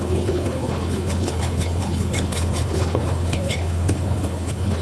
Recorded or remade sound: remade